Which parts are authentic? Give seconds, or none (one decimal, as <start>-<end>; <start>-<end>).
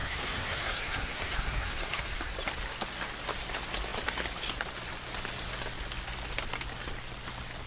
2.0-7.7